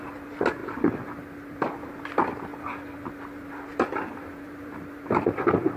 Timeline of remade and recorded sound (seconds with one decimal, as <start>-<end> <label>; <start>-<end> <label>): 0.0-5.8 recorded